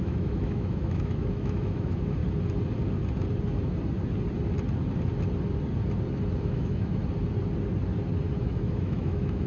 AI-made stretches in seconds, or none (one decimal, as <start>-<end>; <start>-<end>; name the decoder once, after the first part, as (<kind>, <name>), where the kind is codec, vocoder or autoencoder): 0.0-2.2 (autoencoder, DAC-VAE); 6.4-7.0; 8.4-9.5